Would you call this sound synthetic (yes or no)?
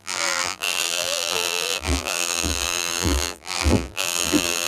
yes